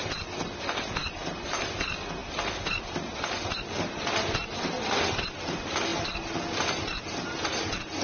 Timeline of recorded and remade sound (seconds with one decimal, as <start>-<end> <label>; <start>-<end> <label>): 0.0-8.0 recorded